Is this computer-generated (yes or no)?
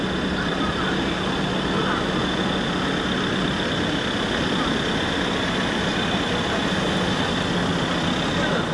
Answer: no